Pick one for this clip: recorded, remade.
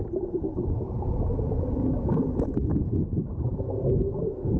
recorded